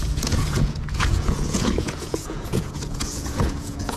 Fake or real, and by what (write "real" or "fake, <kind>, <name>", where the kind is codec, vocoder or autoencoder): fake, vocoder, Vocos